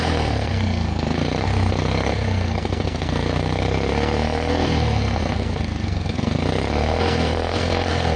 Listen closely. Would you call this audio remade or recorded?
remade